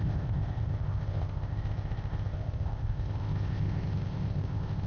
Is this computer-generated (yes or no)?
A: yes